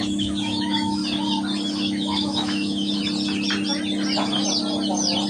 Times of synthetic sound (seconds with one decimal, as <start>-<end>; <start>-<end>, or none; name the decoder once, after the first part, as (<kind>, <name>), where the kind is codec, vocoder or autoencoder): 0.0-1.0 (autoencoder, DAC-VAE); 1.7-3.0

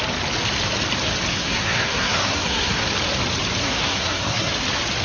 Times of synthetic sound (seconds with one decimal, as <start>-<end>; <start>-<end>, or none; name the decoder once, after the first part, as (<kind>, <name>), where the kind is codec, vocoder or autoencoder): 1.3-2.8 (codec, SNAC); 3.6-4.5

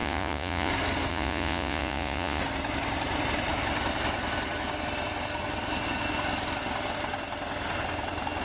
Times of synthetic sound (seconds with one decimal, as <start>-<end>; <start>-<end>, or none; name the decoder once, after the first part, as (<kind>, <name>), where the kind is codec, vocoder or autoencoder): 0.0-0.7 (vocoder, Vocos); 1.1-2.4

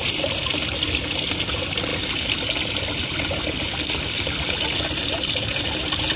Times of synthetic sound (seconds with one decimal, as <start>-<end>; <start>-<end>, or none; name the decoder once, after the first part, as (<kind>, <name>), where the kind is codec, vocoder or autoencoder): none

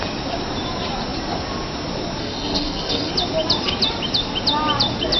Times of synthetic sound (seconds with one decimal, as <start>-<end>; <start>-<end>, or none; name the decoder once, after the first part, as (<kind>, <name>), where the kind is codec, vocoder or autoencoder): 2.2-3.1 (codec, SNAC)

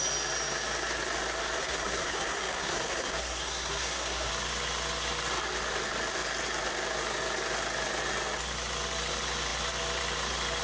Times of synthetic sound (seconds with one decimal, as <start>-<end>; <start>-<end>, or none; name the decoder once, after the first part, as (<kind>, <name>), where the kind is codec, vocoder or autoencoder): 1.6-4.3 (codec, SNAC)